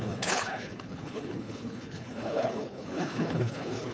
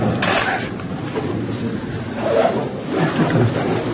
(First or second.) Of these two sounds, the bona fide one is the second